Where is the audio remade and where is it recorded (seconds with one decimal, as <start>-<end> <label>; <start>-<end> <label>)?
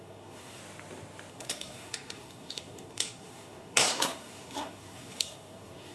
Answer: 0.0-0.6 remade; 0.6-1.3 recorded; 1.3-5.9 remade